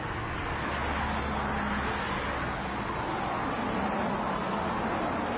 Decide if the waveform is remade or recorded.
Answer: recorded